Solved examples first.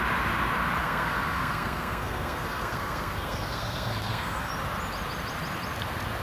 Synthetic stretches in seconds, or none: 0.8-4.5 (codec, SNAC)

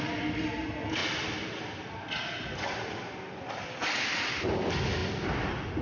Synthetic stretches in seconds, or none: none

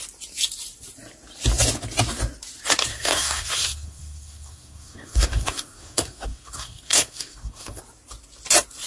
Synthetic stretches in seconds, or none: 2.9-7.8 (codec, SNAC)